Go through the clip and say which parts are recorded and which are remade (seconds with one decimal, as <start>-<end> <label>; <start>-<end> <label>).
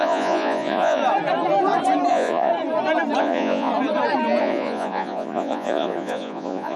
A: 0.0-1.0 remade; 1.0-2.1 recorded; 2.1-2.5 remade; 2.5-3.2 recorded; 3.2-3.7 remade; 3.7-4.4 recorded; 4.4-6.8 remade